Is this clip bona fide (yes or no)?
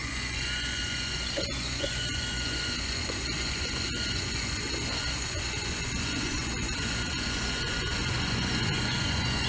no